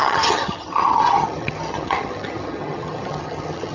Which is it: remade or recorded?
remade